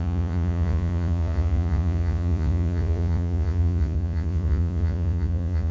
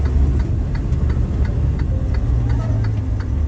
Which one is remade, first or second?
first